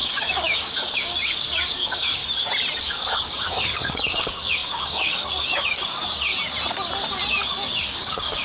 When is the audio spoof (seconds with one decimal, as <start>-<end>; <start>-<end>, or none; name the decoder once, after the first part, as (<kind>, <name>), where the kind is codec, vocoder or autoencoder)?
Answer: 0.0-2.2 (codec, DAC); 2.8-6.3; 7.3-8.4